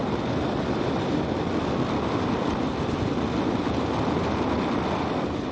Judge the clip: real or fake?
real